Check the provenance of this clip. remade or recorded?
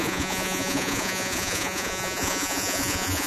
remade